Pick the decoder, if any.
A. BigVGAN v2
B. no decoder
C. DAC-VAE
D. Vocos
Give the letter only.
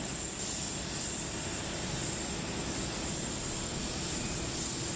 B